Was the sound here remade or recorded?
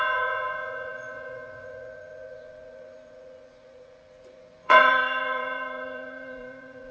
remade